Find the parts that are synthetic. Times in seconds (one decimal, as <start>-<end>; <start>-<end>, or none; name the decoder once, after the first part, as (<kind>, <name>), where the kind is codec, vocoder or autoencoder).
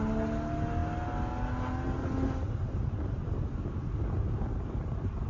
none